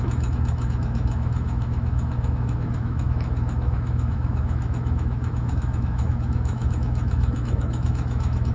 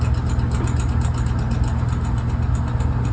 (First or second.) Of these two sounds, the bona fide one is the second